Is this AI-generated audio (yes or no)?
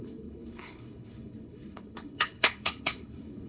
yes